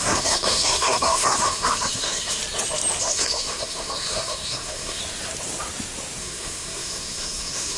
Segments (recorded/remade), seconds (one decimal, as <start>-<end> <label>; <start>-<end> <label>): 0.0-2.4 remade; 2.4-3.0 recorded; 3.0-5.0 remade; 5.0-6.2 recorded; 6.2-7.8 remade